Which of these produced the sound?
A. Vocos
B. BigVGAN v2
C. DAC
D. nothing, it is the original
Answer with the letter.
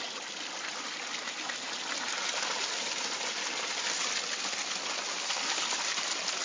D